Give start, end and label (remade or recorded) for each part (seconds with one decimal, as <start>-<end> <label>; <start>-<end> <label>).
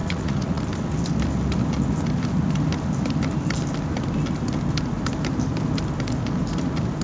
0.0-0.6 remade; 0.6-7.0 recorded